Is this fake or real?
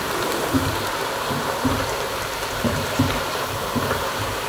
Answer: fake